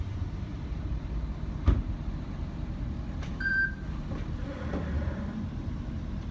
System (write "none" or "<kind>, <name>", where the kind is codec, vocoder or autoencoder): vocoder, BigVGAN v2